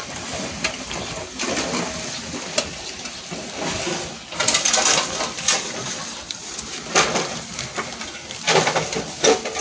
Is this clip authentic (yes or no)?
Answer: yes